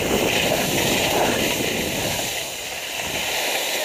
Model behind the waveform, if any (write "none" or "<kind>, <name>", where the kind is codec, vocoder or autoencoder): none